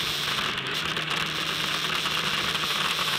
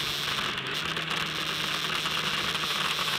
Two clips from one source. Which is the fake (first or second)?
first